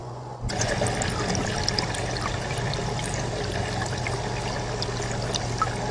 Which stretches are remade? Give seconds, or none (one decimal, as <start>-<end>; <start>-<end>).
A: 0.0-0.7